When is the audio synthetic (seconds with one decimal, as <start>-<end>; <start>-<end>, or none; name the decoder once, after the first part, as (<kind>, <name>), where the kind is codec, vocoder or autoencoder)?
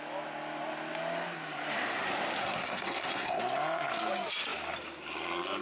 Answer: 2.4-3.4 (codec, SNAC)